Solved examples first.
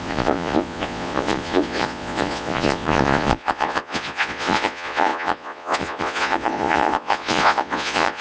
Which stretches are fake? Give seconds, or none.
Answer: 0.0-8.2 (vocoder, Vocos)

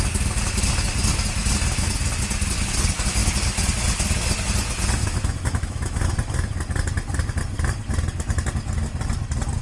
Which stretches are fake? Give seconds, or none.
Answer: 5.0-6.1 (autoencoder, DAC-VAE)

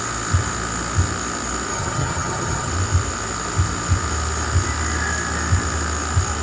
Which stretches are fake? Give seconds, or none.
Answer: 1.7-2.7 (vocoder, HiFi-GAN)

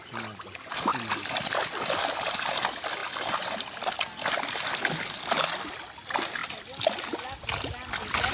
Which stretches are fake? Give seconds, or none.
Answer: none